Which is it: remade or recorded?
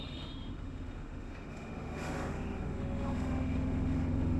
remade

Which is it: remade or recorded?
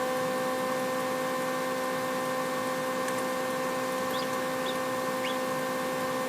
recorded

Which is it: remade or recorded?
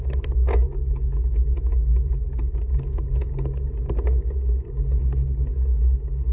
recorded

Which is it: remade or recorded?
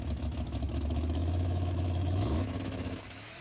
remade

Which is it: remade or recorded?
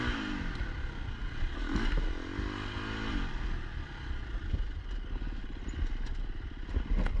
recorded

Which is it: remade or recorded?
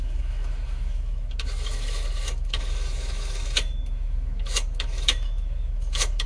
remade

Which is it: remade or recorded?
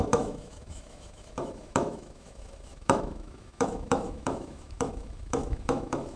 remade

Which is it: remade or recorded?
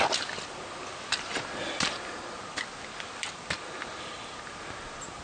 recorded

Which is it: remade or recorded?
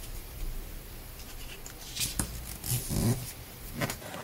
recorded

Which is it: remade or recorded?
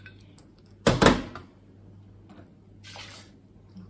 recorded